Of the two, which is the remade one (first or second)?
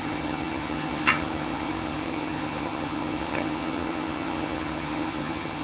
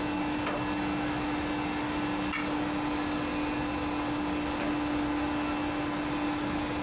first